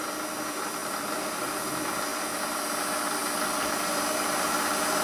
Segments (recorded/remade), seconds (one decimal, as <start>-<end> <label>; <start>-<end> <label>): 0.0-0.8 recorded; 0.8-1.5 remade; 1.5-2.1 recorded; 2.1-2.7 remade; 2.7-5.0 recorded